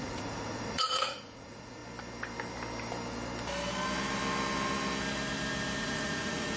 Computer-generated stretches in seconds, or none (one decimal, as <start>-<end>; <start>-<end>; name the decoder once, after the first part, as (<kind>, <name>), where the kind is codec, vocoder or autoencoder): 0.0-1.8 (vocoder, Vocos); 5.8-6.6